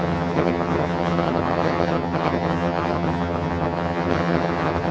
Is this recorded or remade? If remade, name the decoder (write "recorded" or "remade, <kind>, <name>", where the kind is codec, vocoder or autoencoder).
remade, vocoder, HiFi-GAN